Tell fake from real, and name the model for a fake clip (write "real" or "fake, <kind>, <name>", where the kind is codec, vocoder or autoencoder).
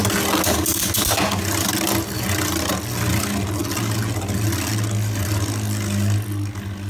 real